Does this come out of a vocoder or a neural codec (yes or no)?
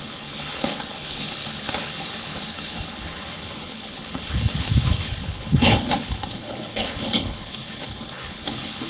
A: yes